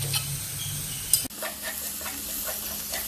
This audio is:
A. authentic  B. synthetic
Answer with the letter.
A